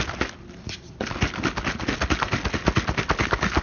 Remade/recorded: recorded